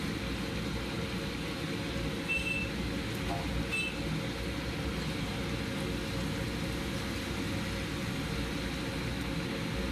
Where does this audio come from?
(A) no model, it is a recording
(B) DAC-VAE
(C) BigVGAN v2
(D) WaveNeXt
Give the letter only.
A